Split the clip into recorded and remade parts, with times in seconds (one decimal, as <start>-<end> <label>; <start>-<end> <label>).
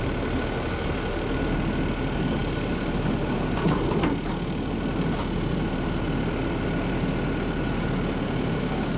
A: 0.0-9.0 recorded